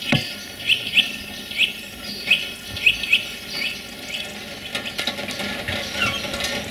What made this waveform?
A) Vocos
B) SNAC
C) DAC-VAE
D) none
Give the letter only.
D